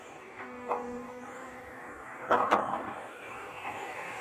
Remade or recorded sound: remade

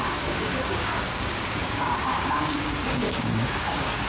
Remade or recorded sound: remade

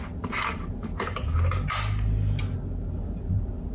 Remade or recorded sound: recorded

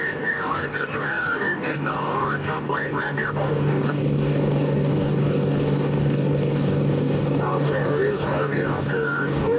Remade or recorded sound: remade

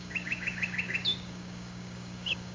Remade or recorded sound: remade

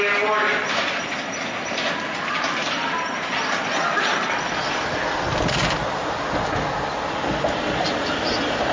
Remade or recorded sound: recorded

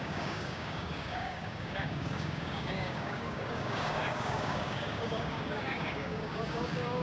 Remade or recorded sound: remade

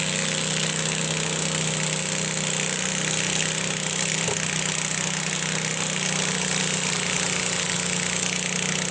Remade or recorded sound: recorded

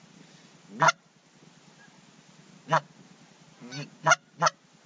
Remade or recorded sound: recorded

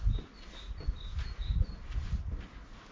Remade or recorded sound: recorded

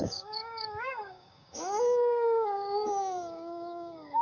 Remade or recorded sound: remade